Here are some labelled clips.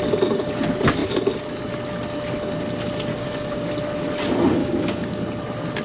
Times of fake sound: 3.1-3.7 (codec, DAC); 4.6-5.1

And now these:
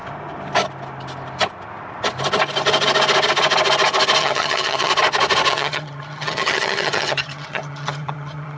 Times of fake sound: 4.2-4.9 (vocoder, HiFi-GAN); 5.5-8.6

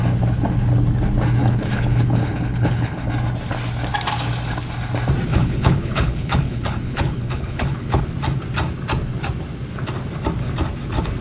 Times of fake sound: 1.4-3.1 (codec, HILCodec); 5.3-8.0

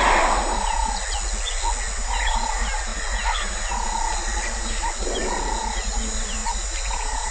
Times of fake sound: none

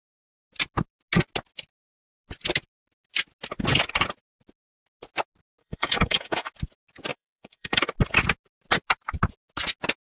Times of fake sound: 5.6-6.5 (codec, DAC); 7.1-7.8

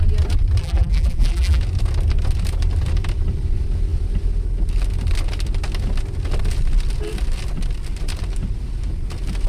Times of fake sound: 0.6-1.6 (vocoder, BigVGAN v2)